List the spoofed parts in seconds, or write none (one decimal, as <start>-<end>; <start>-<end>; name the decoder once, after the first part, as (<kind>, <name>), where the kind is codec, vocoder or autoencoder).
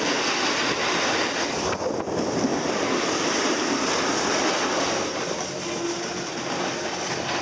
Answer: none